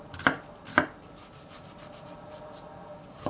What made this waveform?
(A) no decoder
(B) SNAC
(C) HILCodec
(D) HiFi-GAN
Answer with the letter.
A